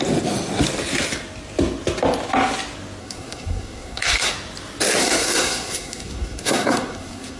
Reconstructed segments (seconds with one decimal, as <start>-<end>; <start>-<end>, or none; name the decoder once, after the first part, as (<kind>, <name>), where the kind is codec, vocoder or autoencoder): 3.0-4.3 (codec, SNAC); 5.0-7.4